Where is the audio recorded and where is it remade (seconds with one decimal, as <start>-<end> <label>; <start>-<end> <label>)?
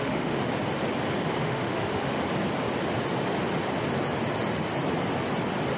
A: 0.0-0.4 remade; 0.4-1.4 recorded; 1.4-2.2 remade; 2.2-5.8 recorded